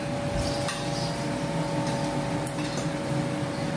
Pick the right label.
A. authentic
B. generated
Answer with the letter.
A